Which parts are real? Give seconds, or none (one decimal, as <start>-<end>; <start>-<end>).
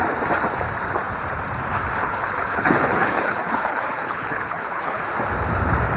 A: 0.0-2.0; 5.0-6.0